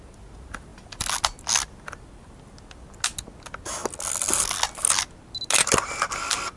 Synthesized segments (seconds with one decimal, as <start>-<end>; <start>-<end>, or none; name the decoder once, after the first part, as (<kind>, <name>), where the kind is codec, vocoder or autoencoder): none